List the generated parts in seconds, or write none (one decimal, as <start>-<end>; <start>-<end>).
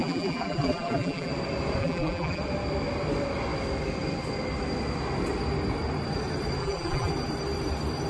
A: 0.0-1.3; 1.8-2.4; 6.6-7.1